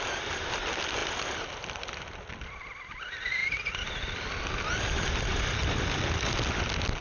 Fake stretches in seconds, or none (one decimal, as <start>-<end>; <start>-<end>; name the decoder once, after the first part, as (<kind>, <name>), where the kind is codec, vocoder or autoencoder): none